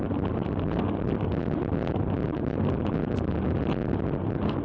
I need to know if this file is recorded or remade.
recorded